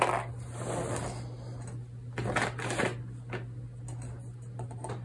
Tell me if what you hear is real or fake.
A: real